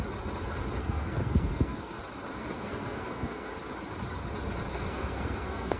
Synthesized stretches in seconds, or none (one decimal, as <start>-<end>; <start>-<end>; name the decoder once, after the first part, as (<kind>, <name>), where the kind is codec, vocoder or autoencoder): 0.8-2.0 (codec, SNAC); 2.4-3.5; 4.7-5.8